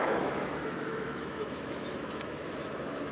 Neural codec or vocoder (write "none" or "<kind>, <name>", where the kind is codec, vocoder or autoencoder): autoencoder, DAC-VAE